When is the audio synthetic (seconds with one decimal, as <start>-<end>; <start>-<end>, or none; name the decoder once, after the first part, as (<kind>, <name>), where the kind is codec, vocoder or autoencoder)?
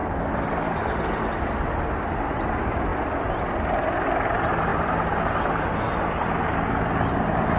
none